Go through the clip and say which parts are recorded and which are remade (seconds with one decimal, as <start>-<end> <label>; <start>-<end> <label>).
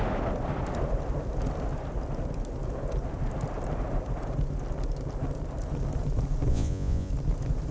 0.0-6.5 recorded; 6.5-7.1 remade; 7.1-7.7 recorded